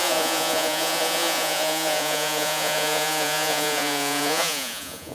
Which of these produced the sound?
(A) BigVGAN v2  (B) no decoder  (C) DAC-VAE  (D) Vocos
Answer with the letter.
D